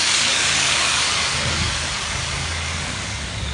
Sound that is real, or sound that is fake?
fake